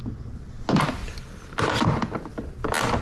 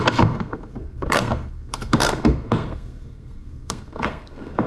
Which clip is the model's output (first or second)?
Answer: second